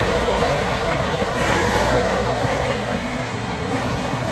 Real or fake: fake